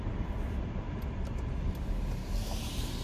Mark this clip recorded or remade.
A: recorded